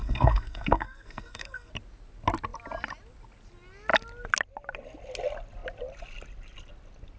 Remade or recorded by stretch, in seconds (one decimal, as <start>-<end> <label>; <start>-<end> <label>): 0.0-1.7 remade; 1.7-7.2 recorded